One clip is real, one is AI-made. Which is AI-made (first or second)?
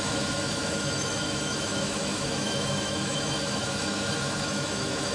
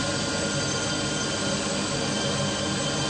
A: first